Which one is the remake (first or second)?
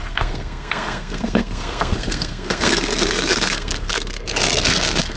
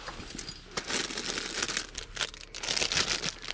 first